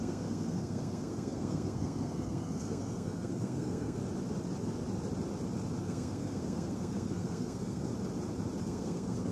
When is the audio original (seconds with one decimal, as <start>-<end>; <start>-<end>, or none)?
4.0-5.8; 7.9-8.6